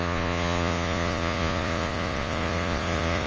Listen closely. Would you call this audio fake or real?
fake